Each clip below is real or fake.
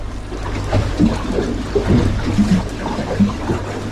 real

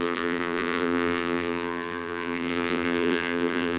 fake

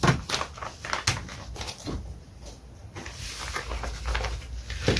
real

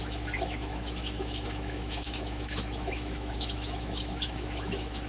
fake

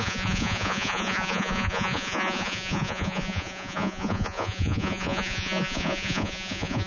fake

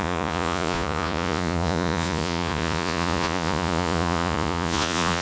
fake